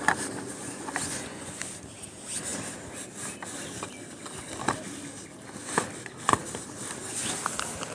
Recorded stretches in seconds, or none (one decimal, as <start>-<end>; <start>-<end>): 0.0-0.6; 1.7-7.9